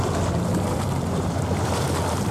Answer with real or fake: real